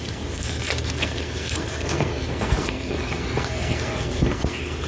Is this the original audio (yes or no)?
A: no